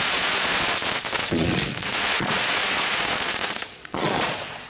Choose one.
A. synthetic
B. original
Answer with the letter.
A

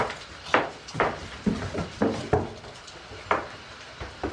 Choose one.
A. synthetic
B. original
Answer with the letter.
B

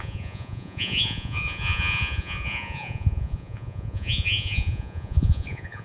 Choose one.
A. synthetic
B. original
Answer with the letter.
A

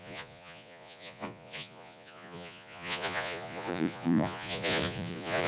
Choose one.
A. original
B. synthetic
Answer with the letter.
B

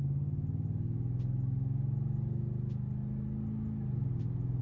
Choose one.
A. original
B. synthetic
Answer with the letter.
A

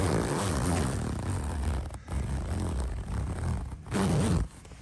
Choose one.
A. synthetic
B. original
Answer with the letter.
B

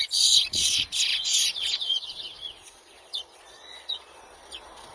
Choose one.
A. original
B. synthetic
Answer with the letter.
B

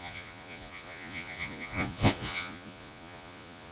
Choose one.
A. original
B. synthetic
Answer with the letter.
B